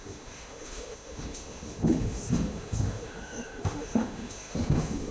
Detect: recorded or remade remade